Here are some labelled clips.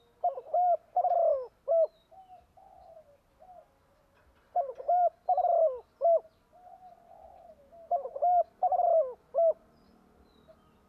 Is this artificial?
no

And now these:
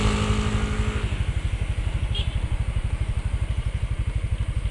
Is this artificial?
no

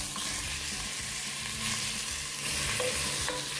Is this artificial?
no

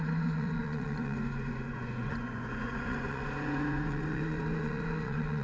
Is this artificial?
yes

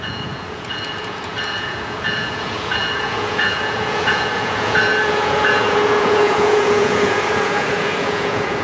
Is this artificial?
yes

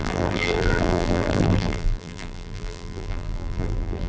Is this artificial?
yes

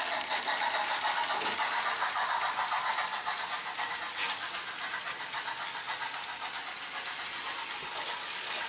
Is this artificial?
no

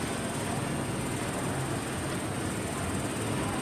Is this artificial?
no